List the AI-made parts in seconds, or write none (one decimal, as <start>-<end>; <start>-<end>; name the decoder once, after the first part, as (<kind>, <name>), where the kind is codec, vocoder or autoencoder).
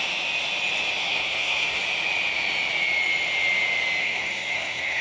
1.0-1.8 (codec, SNAC); 4.0-5.0